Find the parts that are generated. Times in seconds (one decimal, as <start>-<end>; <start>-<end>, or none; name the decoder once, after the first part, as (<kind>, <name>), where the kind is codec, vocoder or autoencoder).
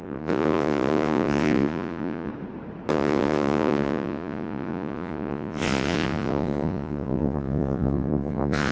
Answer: 0.0-2.3 (vocoder, Vocos); 2.9-8.7